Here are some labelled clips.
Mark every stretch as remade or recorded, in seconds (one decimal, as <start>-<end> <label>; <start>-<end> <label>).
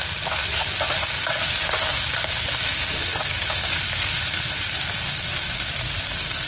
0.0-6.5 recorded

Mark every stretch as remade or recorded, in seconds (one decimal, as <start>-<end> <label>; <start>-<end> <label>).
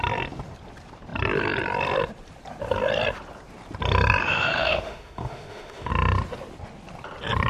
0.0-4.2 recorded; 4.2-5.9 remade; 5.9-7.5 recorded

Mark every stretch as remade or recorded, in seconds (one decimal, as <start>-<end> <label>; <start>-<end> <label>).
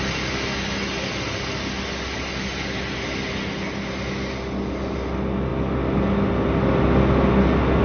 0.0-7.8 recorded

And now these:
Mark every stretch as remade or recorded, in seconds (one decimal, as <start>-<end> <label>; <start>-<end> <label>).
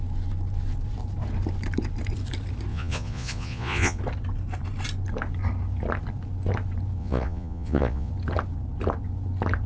0.0-2.7 recorded; 2.7-4.0 remade; 4.0-7.0 recorded; 7.0-8.1 remade; 8.1-9.7 recorded